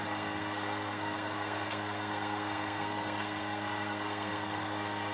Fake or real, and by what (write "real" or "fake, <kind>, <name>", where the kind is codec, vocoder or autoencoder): fake, codec, SNAC